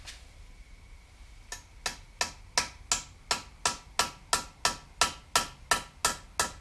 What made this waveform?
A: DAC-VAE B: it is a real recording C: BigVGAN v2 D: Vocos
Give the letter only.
B